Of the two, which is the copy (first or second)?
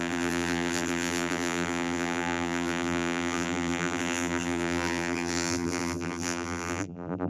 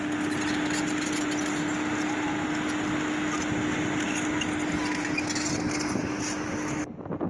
first